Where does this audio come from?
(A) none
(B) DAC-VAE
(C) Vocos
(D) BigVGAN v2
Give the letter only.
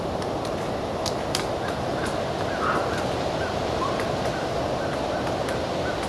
A